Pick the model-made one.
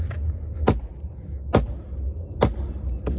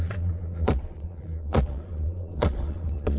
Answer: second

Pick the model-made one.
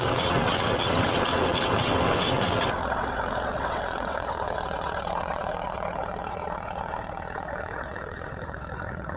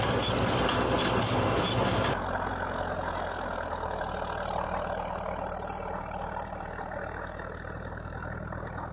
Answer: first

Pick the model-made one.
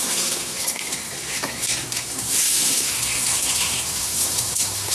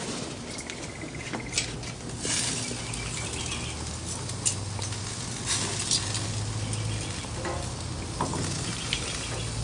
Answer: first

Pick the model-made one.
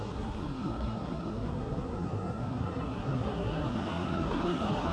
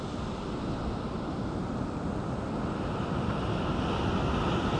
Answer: first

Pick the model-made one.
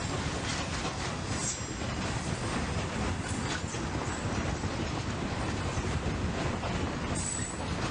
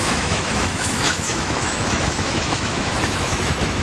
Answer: second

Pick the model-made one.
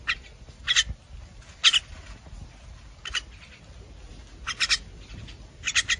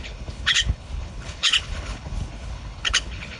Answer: second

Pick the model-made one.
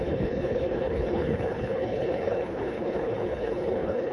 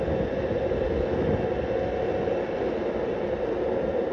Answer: first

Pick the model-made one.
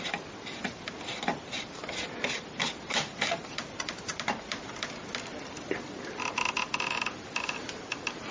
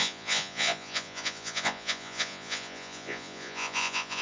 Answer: second